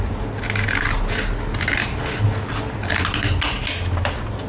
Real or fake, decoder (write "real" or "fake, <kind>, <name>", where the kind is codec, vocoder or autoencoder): real